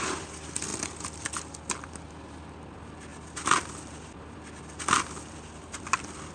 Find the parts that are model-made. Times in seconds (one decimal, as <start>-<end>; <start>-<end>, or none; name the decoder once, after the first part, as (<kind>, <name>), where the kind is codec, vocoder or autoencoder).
none